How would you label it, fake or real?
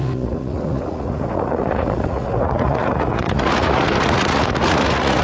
fake